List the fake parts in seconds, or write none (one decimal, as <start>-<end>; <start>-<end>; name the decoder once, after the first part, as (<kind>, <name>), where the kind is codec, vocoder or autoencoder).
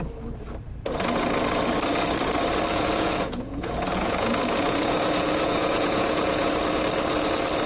2.7-6.5 (vocoder, Vocos)